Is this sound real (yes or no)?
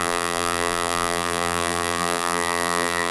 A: no